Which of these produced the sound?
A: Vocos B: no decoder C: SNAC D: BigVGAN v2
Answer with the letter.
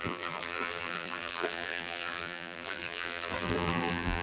D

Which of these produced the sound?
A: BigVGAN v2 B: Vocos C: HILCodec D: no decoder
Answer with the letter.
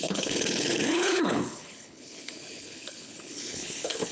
C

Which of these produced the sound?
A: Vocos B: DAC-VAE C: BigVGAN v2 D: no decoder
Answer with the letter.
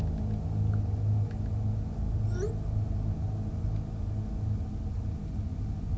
D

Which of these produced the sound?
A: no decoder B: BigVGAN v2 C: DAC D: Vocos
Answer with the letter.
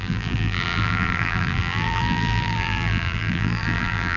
B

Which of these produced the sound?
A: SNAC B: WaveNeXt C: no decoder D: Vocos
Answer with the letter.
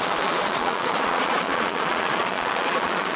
D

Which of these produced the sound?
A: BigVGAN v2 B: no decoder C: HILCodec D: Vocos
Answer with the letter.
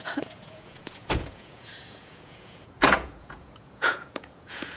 D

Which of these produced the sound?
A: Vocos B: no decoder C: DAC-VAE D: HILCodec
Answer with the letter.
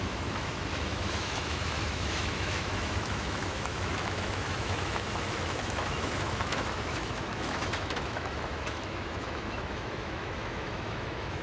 C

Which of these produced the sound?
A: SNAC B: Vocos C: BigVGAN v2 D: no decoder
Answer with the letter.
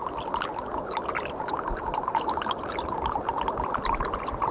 D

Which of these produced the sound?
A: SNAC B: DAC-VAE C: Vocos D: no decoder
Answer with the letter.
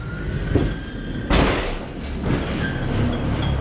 D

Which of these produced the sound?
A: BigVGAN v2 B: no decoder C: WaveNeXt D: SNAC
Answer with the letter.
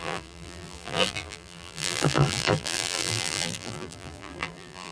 A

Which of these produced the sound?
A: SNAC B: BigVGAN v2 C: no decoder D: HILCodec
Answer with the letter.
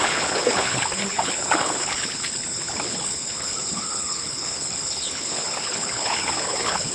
D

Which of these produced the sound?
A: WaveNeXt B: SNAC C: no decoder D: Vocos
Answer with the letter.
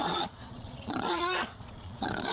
D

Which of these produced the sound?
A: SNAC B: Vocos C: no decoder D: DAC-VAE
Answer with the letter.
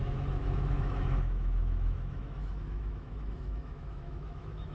D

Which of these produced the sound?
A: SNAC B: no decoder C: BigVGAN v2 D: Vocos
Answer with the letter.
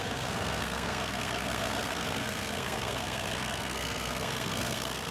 A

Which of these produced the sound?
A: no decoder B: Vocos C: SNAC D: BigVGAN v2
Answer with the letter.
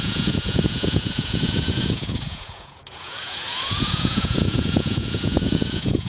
B